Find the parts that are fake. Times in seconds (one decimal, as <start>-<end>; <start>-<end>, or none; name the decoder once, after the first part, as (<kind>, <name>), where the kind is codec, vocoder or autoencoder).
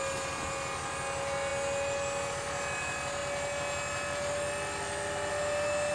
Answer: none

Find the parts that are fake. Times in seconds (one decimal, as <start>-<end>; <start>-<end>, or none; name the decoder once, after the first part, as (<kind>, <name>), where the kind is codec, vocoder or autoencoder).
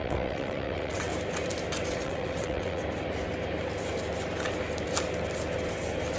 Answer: 0.0-1.1 (vocoder, WaveNeXt); 1.9-2.8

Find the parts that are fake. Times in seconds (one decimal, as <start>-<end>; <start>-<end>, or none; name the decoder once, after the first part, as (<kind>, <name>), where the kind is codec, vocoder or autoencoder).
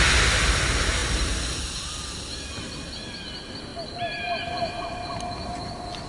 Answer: none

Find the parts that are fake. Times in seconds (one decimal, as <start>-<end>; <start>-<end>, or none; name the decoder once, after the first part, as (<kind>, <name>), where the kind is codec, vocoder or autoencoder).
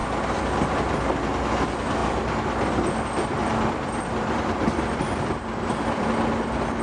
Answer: 2.0-6.1 (vocoder, BigVGAN v2)